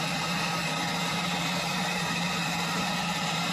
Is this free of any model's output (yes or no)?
yes